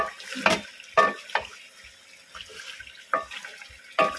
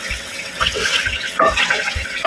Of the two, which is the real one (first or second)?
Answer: first